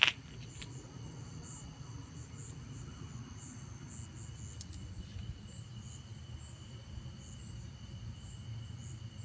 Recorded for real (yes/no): yes